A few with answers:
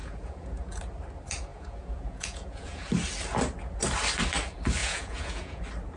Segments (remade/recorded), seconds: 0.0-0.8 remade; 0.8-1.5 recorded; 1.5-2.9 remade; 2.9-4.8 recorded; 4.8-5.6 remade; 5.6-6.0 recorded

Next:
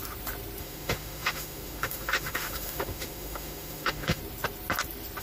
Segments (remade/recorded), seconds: 0.0-0.6 recorded; 0.6-4.2 remade; 4.2-5.2 recorded

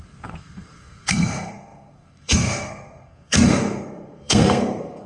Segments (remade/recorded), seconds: 0.0-5.1 remade

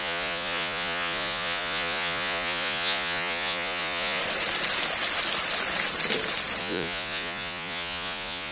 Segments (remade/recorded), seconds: 0.0-4.2 remade; 4.2-6.6 recorded; 6.6-8.5 remade